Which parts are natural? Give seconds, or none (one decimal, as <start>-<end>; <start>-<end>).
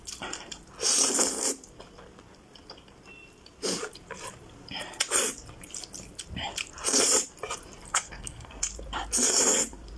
0.0-7.9; 8.6-10.0